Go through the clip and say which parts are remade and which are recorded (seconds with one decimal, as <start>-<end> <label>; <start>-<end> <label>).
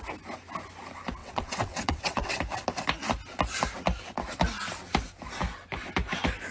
0.0-1.2 recorded; 1.2-2.4 remade; 2.4-6.5 recorded